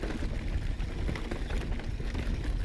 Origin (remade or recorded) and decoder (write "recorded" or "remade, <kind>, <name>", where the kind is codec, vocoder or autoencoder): recorded